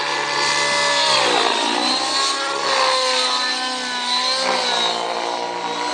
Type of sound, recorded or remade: recorded